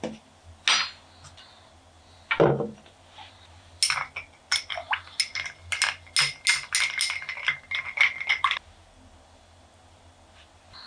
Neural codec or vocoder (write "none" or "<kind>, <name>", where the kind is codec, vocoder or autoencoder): none